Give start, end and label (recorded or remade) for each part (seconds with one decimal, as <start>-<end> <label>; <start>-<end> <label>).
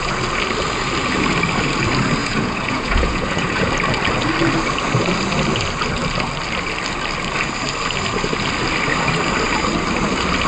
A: 0.0-2.2 recorded; 2.2-3.7 remade; 3.7-10.5 recorded